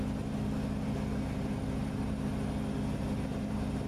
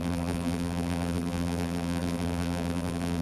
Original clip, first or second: first